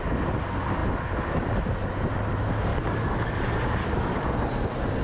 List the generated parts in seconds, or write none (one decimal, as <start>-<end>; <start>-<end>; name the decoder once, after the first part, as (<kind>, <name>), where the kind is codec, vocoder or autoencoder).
2.7-3.4 (codec, DAC); 3.8-4.5